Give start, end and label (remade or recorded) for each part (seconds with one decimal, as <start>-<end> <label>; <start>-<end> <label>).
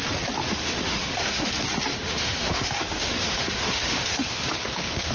0.0-0.4 recorded; 0.4-1.5 remade; 1.5-1.9 recorded; 1.9-5.1 remade